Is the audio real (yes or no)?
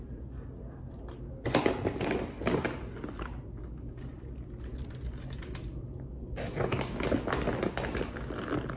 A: yes